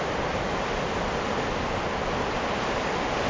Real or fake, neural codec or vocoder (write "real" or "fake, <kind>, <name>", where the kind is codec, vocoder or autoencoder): real